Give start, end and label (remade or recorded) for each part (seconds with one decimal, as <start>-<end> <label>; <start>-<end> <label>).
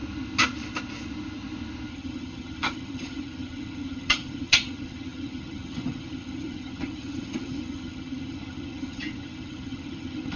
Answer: 0.0-1.9 recorded; 1.9-10.4 remade